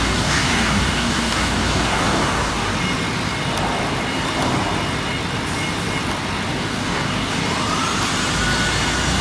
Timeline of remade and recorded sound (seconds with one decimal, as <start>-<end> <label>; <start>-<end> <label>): 0.0-2.7 remade; 2.7-6.6 recorded; 6.6-7.4 remade; 7.4-9.2 recorded